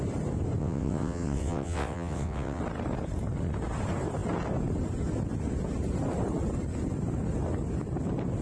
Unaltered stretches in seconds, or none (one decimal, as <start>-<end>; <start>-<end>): 0.0-0.6; 2.6-8.4